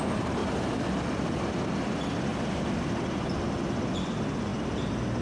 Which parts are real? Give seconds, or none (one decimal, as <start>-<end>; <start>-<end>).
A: 0.0-5.2